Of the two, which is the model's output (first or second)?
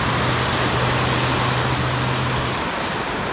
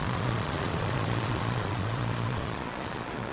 second